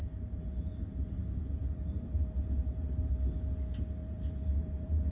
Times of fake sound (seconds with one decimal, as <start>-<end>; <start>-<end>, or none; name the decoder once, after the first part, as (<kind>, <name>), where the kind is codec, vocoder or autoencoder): 0.0-3.1 (vocoder, BigVGAN v2); 4.0-5.1